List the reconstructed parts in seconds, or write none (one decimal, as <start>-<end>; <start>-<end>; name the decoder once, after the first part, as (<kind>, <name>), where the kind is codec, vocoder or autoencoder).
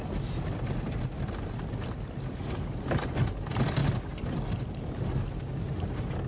none